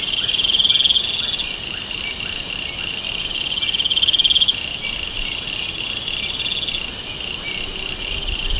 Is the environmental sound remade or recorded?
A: recorded